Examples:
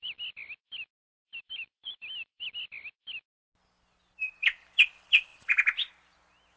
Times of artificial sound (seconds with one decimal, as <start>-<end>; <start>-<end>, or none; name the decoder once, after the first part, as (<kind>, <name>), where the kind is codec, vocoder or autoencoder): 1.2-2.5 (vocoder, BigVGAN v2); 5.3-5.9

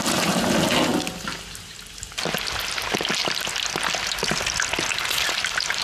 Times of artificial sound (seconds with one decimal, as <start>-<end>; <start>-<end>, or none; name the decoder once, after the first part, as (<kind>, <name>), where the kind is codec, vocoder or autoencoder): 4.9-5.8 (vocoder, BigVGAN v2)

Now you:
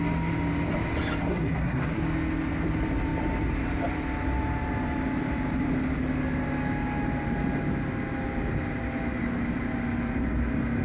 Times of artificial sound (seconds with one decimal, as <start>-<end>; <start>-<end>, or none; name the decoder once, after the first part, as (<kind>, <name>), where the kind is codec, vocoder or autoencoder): 1.3-2.0 (codec, SNAC)